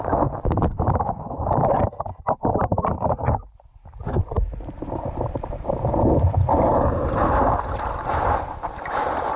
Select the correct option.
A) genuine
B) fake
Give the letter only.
B